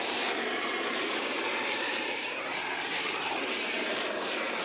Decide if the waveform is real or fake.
fake